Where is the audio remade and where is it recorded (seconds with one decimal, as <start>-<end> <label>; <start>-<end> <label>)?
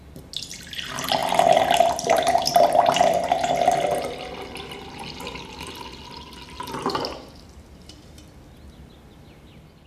0.0-9.9 recorded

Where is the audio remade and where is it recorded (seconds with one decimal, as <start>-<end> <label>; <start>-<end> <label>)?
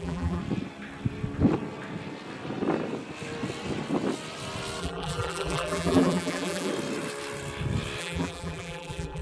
0.0-0.4 remade; 0.4-4.8 recorded; 4.8-6.7 remade; 6.7-8.0 recorded; 8.0-9.2 remade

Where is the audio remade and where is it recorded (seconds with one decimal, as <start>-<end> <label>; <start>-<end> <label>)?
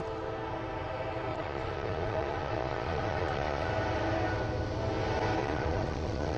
0.0-1.3 recorded; 1.3-3.7 remade; 3.7-5.4 recorded; 5.4-6.4 remade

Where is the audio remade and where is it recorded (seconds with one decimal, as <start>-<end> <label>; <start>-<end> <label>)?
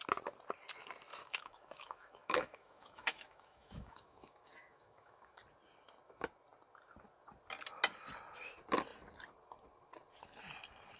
0.0-1.1 recorded; 1.1-5.4 remade; 5.4-11.0 recorded